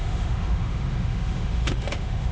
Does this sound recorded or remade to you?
remade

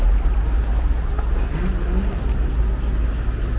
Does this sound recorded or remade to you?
recorded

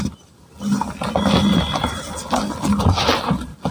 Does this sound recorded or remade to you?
recorded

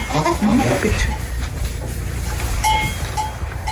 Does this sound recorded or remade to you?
remade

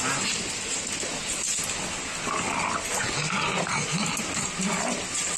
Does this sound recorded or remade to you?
recorded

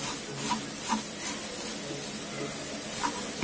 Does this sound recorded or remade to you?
recorded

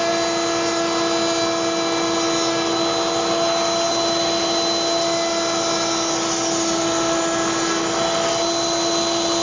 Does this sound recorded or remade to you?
recorded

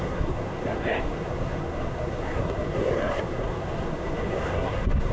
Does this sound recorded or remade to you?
remade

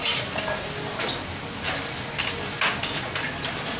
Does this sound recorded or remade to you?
recorded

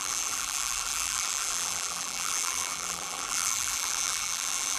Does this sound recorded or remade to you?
remade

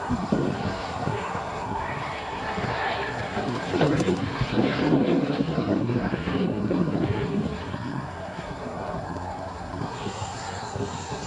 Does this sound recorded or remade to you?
remade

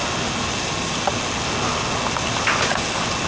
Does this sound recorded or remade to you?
recorded